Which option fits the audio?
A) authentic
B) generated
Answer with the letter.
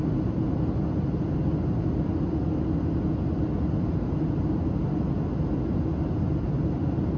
A